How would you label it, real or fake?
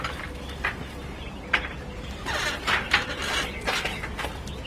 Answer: real